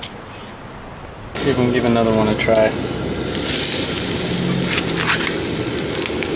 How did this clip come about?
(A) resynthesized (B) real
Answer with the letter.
B